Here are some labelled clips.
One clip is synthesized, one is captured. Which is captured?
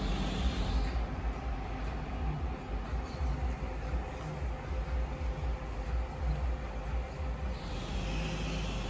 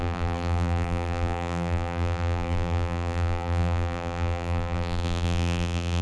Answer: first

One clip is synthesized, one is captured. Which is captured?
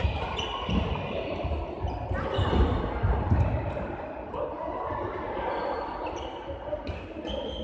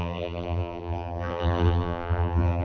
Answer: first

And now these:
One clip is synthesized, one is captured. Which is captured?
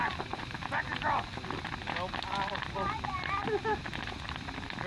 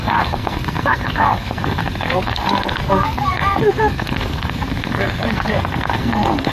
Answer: first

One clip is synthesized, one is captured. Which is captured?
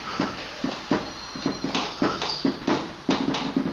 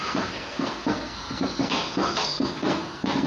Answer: first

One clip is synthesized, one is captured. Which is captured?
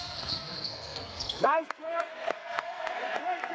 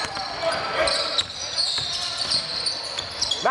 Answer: second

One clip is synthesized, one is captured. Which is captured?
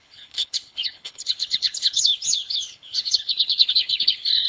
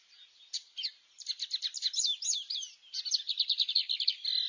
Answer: second